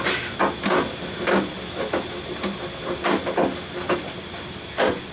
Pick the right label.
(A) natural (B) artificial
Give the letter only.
A